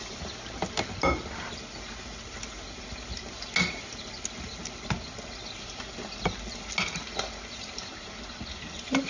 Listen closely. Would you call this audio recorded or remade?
recorded